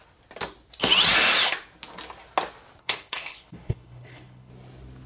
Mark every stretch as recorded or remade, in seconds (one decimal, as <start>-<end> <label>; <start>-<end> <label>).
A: 0.0-2.8 recorded; 2.8-4.5 remade; 4.5-5.1 recorded